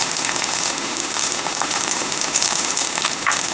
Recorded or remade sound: remade